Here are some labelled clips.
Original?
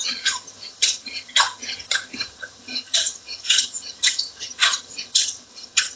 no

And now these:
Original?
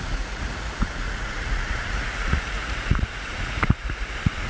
no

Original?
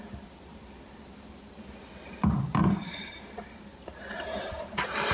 no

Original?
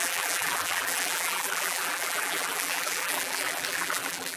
no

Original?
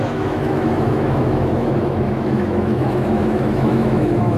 no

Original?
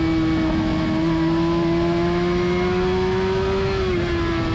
yes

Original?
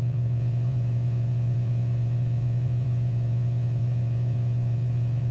no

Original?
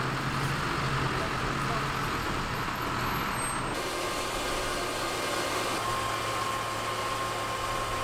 yes